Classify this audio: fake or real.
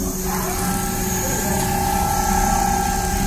real